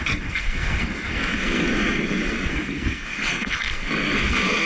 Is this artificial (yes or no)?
yes